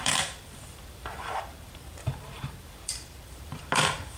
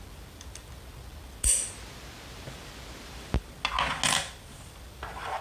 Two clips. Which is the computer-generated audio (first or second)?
first